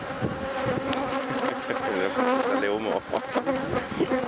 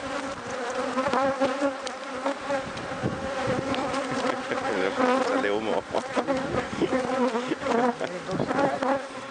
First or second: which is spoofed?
second